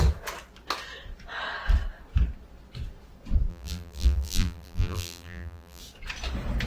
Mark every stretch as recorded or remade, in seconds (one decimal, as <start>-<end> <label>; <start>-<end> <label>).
0.0-3.5 recorded; 3.5-5.8 remade; 5.8-6.7 recorded